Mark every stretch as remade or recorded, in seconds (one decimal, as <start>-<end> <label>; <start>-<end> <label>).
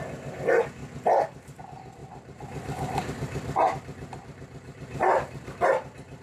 0.0-2.0 recorded; 2.0-5.7 remade; 5.7-6.2 recorded